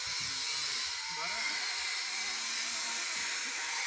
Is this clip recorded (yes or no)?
yes